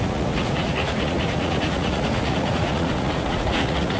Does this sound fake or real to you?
fake